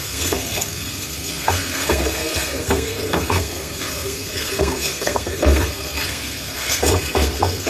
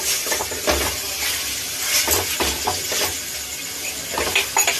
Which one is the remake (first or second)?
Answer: first